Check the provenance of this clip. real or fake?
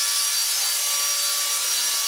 real